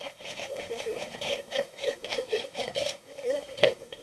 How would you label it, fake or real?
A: fake